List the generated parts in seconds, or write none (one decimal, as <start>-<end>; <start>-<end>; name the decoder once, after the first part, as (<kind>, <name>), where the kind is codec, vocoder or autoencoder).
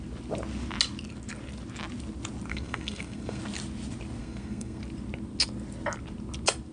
2.5-3.4 (codec, SNAC); 4.2-4.8